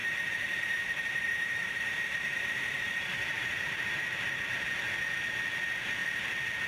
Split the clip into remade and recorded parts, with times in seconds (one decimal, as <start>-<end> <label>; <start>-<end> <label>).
0.0-4.0 remade; 4.0-6.7 recorded